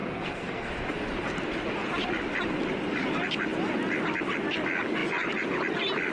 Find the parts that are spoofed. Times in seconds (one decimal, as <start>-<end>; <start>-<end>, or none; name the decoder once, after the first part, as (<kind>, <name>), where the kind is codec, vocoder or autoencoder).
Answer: 0.0-0.7 (codec, SNAC)